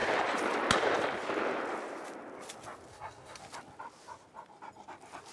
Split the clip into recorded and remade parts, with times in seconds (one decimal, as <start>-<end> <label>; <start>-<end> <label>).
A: 0.0-2.9 recorded; 2.9-3.4 remade; 3.4-5.3 recorded